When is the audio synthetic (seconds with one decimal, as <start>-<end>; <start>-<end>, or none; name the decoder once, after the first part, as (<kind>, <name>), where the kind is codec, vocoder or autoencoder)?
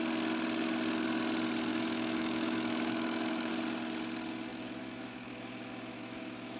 1.7-3.5 (autoencoder, DAC-VAE); 4.5-6.6